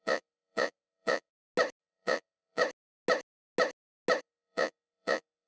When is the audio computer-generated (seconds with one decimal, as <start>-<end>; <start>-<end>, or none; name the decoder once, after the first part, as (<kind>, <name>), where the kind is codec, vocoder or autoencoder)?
0.0-1.3 (vocoder, Vocos); 1.8-2.6; 4.2-5.5